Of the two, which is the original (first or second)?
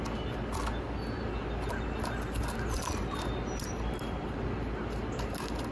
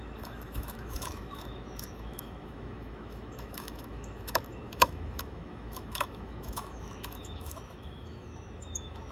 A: first